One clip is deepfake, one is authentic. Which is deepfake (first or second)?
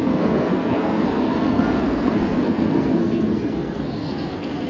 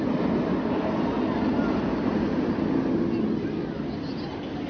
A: first